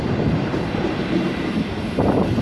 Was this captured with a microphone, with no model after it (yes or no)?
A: no